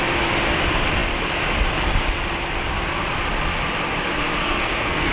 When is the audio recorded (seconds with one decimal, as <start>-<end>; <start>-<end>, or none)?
0.0-4.4